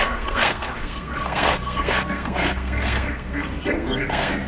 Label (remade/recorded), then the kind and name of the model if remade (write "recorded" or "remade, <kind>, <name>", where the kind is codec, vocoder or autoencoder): remade, codec, SNAC